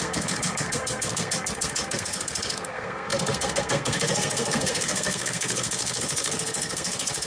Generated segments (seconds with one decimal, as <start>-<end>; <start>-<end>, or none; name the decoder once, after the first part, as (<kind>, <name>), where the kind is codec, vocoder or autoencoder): 0.0-7.3 (codec, SNAC)